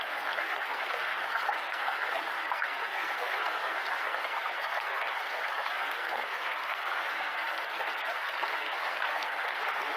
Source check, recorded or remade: remade